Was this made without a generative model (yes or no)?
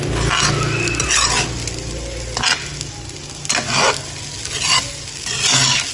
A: yes